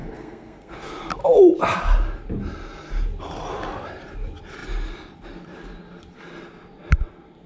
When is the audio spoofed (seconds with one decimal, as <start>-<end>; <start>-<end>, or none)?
0.0-0.7